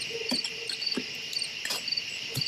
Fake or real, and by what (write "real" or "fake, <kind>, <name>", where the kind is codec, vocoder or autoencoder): real